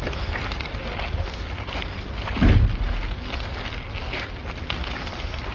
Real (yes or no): yes